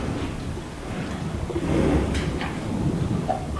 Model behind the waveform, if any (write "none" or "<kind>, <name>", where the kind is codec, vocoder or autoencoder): none